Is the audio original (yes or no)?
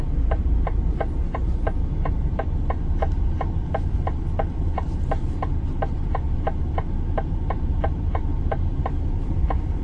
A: no